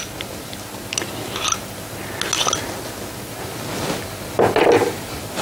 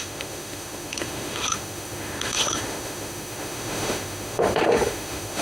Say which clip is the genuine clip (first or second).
first